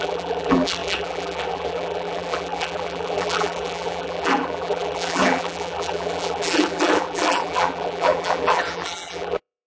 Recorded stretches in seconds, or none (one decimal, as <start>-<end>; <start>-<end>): none